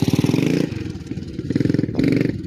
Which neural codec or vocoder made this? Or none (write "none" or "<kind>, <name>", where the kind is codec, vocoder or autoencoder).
none